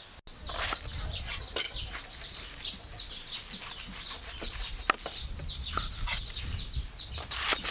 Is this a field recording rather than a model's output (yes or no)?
yes